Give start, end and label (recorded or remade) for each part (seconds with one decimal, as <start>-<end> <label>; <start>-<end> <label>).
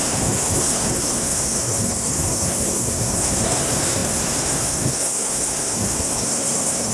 0.0-6.9 remade